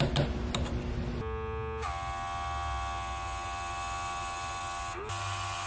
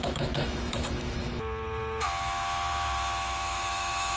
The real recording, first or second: first